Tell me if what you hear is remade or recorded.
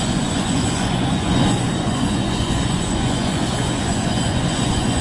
remade